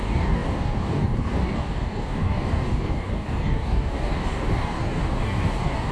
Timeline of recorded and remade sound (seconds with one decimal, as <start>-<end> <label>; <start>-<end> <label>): 0.0-5.9 remade